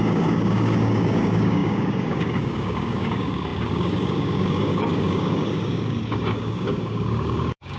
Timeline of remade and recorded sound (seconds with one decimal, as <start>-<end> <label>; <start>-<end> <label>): 0.0-7.8 remade

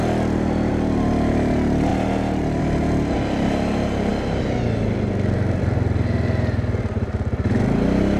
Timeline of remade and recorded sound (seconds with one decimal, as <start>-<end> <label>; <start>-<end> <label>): 0.0-8.2 recorded